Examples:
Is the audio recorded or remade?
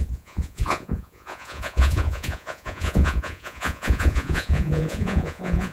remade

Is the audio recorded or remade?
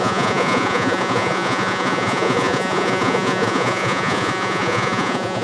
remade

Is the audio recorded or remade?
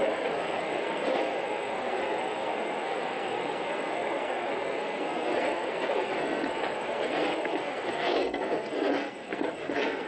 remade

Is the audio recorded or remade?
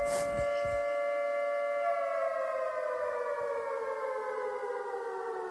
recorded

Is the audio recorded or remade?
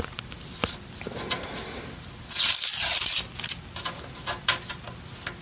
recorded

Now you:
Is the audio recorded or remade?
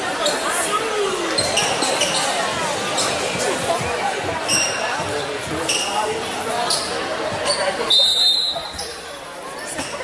recorded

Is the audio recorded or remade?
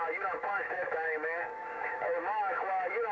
remade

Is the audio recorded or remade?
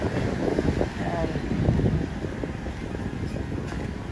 recorded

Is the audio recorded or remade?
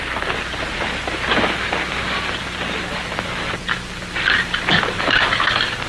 recorded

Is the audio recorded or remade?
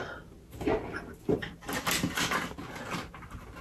recorded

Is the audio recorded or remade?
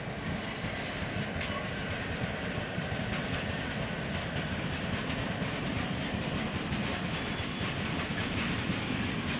recorded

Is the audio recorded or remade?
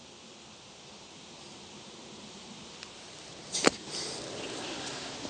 recorded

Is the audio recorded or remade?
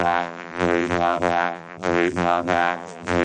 remade